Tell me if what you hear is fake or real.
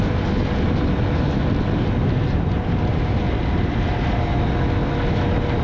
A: real